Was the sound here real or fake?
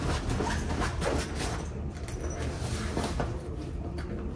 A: real